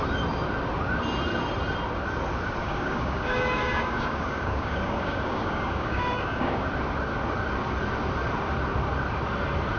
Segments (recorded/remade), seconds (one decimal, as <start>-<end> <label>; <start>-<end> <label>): 0.0-2.6 recorded; 2.6-6.7 remade; 6.7-9.8 recorded